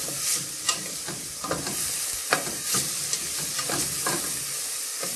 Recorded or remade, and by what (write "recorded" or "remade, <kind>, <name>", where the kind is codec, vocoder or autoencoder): recorded